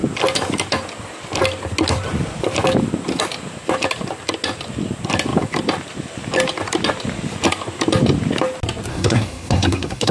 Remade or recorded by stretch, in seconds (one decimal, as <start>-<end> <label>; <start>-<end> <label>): 0.0-8.9 recorded; 8.9-10.1 remade